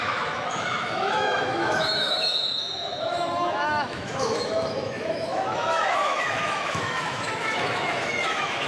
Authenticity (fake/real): fake